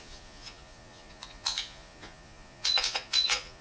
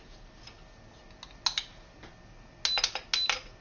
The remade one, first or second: first